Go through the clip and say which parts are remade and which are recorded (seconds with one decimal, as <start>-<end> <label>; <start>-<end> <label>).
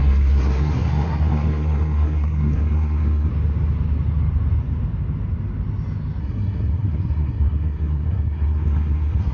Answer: 0.0-3.3 remade; 3.3-6.2 recorded; 6.2-9.3 remade